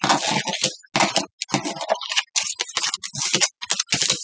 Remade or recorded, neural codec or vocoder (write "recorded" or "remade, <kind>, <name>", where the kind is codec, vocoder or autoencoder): recorded